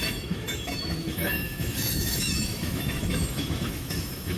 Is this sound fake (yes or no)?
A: yes